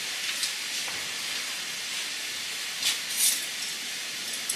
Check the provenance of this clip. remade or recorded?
recorded